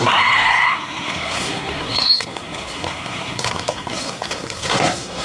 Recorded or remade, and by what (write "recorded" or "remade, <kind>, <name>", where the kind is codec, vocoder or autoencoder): remade, codec, SNAC